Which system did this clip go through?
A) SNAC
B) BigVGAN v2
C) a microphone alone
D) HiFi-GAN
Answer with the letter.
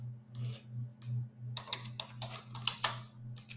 C